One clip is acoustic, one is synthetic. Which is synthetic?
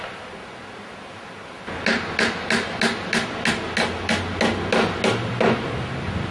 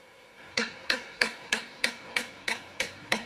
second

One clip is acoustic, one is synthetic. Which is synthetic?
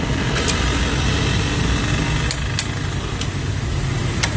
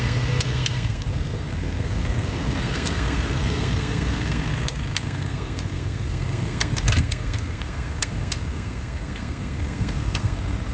second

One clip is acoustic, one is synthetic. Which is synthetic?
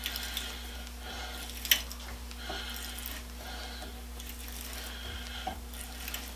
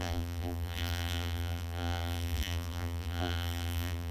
second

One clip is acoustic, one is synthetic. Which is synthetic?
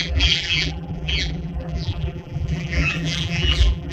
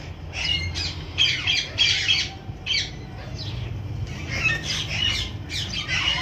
first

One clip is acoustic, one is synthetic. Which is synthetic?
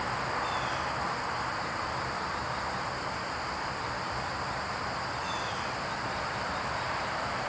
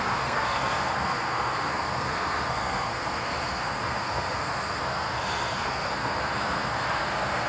second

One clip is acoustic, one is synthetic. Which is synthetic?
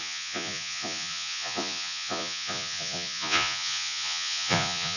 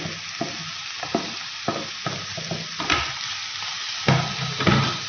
first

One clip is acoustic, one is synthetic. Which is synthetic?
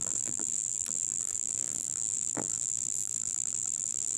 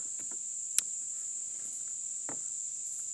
first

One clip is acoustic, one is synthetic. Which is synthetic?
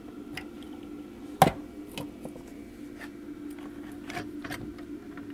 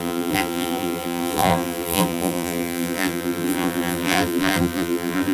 second